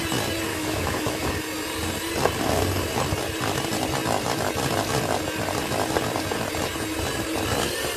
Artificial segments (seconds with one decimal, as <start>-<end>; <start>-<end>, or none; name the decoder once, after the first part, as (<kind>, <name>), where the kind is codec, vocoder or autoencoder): 0.5-1.3 (autoencoder, DAC-VAE)

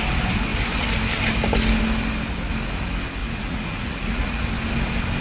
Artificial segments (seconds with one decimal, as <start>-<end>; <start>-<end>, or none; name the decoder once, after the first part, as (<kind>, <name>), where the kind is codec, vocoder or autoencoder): 3.2-4.4 (vocoder, Vocos)

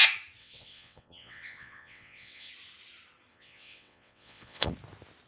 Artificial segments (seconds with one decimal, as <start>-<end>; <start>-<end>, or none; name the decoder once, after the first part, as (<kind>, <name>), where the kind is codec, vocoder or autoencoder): 0.4-2.5 (vocoder, WaveNeXt); 3.3-4.7

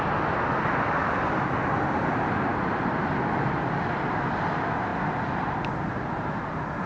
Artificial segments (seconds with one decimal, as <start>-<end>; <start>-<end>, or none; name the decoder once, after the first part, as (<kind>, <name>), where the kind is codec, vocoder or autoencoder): none

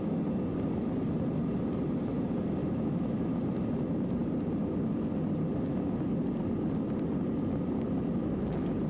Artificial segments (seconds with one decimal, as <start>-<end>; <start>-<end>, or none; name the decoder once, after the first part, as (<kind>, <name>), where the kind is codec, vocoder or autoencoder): 2.6-3.3 (autoencoder, DAC-VAE)

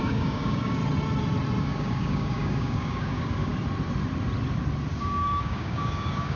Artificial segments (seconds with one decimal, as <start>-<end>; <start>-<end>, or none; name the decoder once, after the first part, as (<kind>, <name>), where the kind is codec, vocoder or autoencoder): 0.0-0.8 (codec, DAC); 1.6-3.5; 5.0-6.4

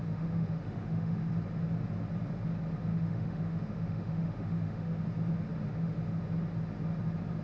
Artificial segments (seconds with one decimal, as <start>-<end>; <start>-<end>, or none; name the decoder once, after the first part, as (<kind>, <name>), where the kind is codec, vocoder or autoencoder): 0.0-1.3 (autoencoder, DAC-VAE); 2.9-5.0; 5.6-6.2

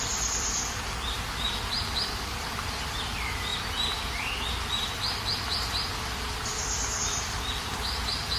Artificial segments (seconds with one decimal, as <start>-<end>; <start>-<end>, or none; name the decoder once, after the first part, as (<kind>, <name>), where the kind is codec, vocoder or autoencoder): 0.0-3.5 (vocoder, BigVGAN v2); 5.9-6.5; 7.5-8.4